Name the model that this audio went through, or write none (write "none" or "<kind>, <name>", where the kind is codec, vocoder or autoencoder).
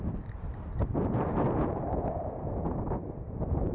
none